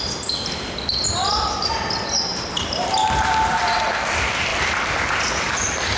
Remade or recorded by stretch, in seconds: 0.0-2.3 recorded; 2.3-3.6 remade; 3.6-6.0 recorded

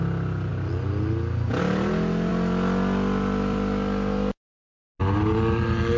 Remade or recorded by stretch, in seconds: 0.0-6.0 recorded

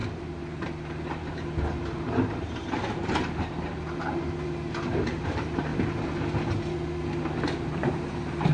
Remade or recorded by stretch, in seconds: 0.0-5.7 remade; 5.7-7.4 recorded; 7.4-8.5 remade

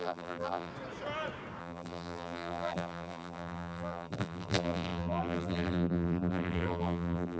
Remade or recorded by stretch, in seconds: 0.0-0.7 remade; 0.7-1.6 recorded; 1.6-7.4 remade

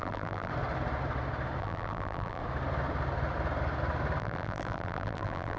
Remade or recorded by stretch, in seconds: 0.0-0.5 remade; 0.5-1.6 recorded; 1.6-2.4 remade; 2.4-4.2 recorded; 4.2-5.6 remade

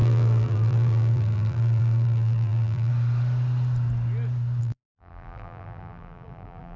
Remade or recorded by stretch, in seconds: 0.0-2.9 remade; 2.9-4.6 recorded; 4.6-6.8 remade

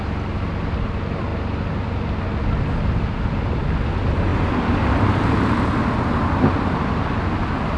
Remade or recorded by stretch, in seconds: 0.0-7.8 recorded

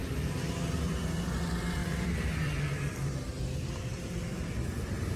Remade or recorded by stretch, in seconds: 0.0-1.8 recorded; 1.8-5.2 remade